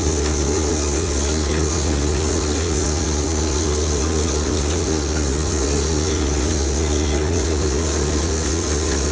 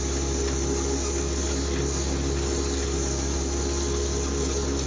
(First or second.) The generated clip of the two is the first